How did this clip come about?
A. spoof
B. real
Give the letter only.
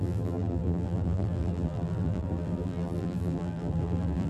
A